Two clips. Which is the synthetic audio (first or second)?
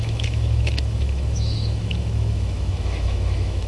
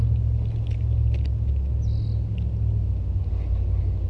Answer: first